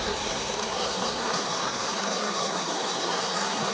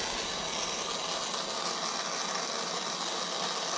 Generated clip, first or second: first